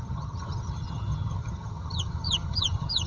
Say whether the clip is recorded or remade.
remade